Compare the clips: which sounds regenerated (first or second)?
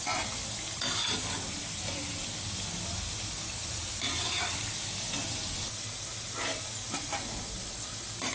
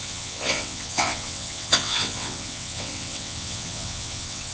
second